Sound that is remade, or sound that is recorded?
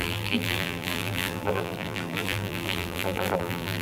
remade